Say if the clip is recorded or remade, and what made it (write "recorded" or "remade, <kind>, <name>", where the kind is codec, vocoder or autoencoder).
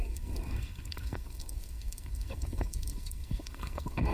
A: remade, codec, SNAC